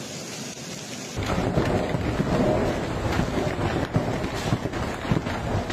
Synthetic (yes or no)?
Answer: no